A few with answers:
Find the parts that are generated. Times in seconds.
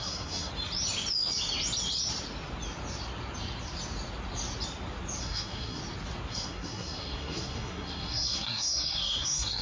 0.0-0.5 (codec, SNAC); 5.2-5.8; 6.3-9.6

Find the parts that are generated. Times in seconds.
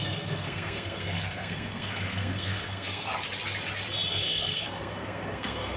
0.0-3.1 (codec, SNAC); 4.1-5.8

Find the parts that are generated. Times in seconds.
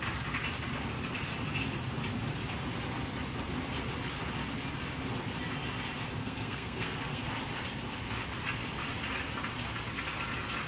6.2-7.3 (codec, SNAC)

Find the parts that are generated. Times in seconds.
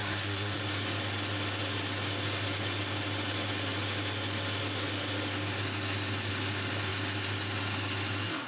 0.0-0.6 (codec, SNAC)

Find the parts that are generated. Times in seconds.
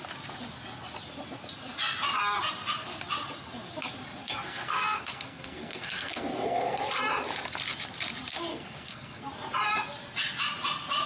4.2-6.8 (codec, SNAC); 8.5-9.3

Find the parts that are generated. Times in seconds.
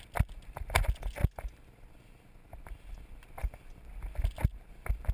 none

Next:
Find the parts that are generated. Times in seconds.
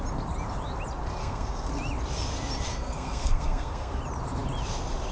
1.2-1.7 (codec, SNAC); 2.7-4.0